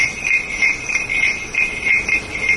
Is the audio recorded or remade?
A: recorded